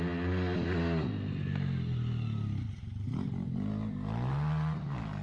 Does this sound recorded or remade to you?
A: recorded